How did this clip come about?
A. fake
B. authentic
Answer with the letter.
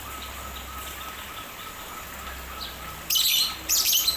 B